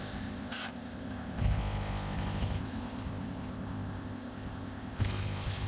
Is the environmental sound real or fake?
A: fake